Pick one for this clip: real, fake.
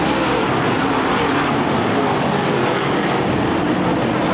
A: real